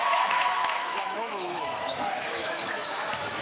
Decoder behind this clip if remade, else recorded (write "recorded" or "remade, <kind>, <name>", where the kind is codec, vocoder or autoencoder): remade, autoencoder, DAC-VAE